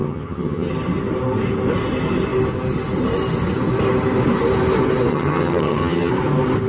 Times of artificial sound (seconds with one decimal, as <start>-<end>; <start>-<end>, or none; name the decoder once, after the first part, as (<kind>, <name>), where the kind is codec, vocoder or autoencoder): 0.0-0.7 (vocoder, HiFi-GAN); 5.1-6.1